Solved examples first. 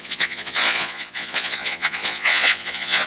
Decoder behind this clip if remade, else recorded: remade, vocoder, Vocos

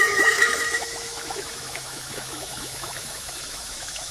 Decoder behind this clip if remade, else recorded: remade, autoencoder, DAC-VAE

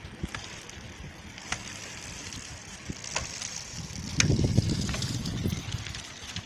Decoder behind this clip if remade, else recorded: recorded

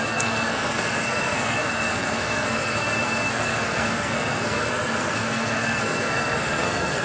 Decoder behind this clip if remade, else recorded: remade, codec, SNAC